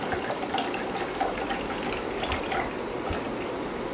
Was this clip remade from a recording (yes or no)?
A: no